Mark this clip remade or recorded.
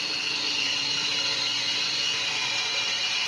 remade